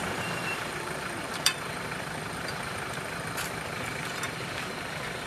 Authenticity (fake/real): fake